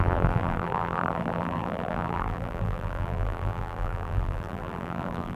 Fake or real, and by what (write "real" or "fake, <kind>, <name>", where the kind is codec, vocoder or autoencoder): fake, vocoder, BigVGAN v2